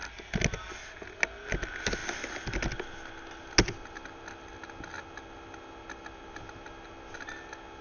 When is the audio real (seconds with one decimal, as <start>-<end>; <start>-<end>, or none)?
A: 0.0-7.8